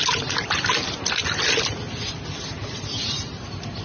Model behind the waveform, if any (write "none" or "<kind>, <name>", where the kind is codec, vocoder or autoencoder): none